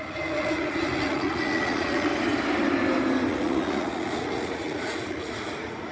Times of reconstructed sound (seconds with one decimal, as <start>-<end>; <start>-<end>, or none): 0.0-2.1; 3.3-5.9